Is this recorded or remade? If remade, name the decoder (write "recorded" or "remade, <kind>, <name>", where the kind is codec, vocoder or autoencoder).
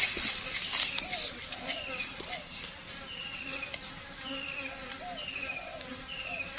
recorded